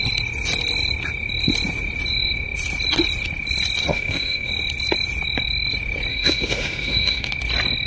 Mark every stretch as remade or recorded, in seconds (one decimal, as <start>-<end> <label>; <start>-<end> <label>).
0.0-3.9 recorded; 3.9-4.5 remade; 4.5-6.1 recorded; 6.1-7.3 remade; 7.3-7.9 recorded